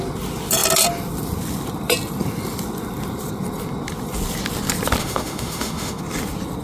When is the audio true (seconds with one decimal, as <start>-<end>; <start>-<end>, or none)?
0.0-5.0; 6.0-6.6